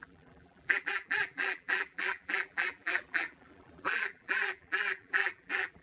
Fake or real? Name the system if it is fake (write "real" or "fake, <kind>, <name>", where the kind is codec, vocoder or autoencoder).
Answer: fake, vocoder, BigVGAN v2